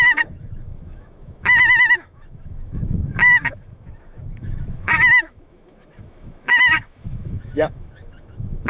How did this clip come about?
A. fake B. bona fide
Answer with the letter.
A